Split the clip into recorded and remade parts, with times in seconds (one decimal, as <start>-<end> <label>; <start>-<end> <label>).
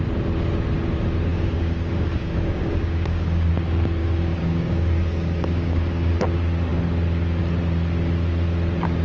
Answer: 0.0-1.3 recorded; 1.3-3.5 remade; 3.5-4.0 recorded; 4.0-6.2 remade; 6.2-9.0 recorded